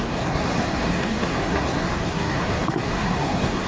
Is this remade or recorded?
remade